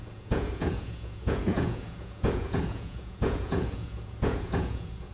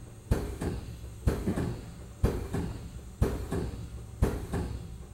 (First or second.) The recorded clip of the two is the second